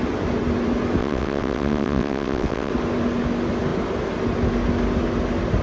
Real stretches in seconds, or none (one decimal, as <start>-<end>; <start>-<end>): 0.0-1.0; 2.7-5.6